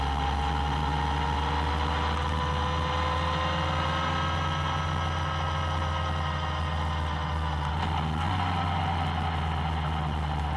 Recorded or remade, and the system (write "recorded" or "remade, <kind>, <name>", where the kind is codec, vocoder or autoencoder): recorded